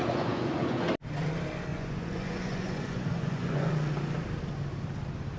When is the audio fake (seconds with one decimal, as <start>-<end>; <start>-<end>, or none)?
0.0-0.9; 1.7-3.7